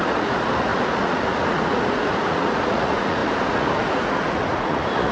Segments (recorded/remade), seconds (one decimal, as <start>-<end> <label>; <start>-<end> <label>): 0.0-5.1 remade